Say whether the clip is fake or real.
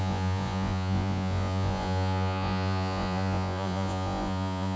fake